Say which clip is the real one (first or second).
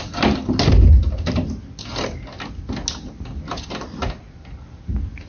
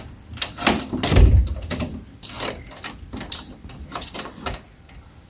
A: first